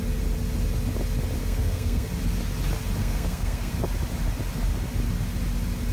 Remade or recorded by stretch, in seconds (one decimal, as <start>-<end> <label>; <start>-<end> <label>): 0.0-1.4 recorded; 1.4-2.1 remade; 2.1-3.0 recorded; 3.0-3.7 remade; 3.7-5.9 recorded